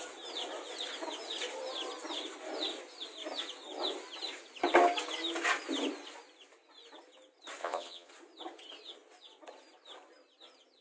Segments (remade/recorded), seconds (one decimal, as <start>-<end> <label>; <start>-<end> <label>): 0.0-7.6 recorded; 7.6-8.1 remade; 8.1-10.8 recorded